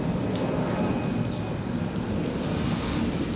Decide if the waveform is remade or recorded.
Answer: recorded